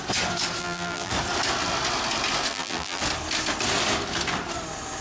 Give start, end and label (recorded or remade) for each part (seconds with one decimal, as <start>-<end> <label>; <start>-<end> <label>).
0.0-0.6 recorded; 0.6-1.1 remade; 1.1-2.5 recorded; 2.5-3.0 remade; 3.0-5.0 recorded